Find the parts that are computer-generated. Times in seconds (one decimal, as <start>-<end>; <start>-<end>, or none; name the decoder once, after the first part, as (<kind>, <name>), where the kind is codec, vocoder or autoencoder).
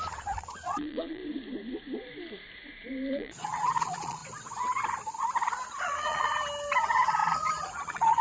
0.0-1.2 (vocoder, Vocos); 3.1-4.2; 5.7-6.3; 6.8-8.2